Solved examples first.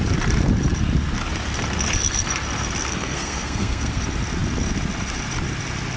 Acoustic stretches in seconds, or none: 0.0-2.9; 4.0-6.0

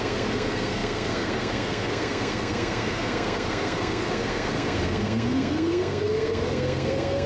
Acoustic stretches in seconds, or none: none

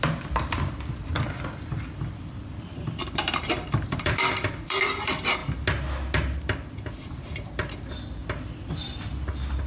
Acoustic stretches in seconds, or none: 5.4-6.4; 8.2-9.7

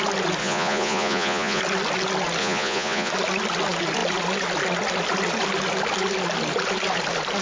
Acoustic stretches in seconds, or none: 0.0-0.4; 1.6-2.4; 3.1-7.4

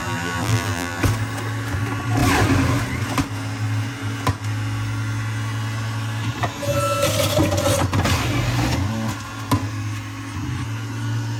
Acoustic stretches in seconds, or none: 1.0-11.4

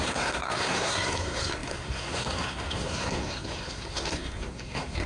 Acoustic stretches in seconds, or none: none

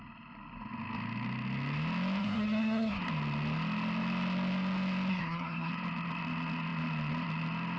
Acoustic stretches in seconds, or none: 0.0-2.2; 3.0-5.1; 5.7-7.8